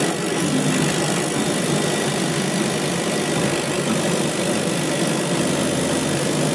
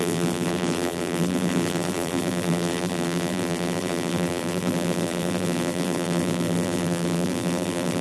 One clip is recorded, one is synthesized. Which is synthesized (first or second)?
second